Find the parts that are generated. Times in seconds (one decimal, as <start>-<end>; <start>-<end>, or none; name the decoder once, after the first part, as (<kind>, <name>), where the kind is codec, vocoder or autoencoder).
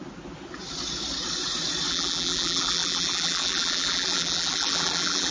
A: 1.9-5.3 (vocoder, BigVGAN v2)